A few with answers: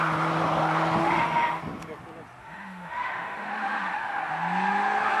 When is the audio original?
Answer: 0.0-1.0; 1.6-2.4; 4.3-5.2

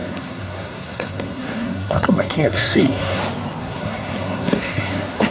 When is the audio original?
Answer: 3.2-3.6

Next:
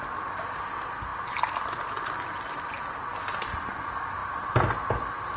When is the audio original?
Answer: 0.0-5.4

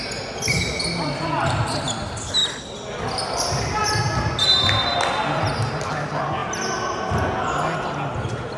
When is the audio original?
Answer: 0.0-8.6